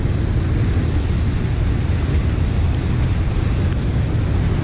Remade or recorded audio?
recorded